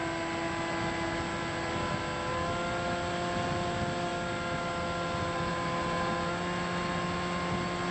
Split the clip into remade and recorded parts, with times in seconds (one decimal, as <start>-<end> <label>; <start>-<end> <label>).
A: 0.0-7.9 recorded